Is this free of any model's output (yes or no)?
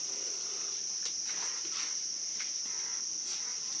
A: yes